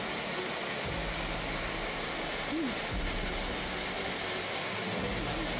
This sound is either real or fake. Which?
real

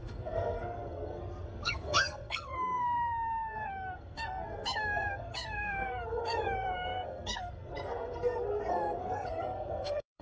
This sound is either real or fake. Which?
fake